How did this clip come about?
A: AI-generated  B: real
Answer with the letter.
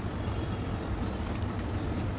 A